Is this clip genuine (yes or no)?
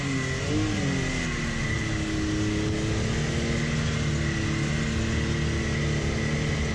yes